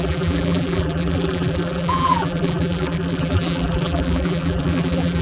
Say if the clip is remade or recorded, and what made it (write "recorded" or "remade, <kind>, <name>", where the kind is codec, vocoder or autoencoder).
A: remade, vocoder, BigVGAN v2